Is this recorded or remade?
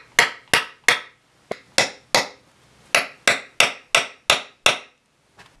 recorded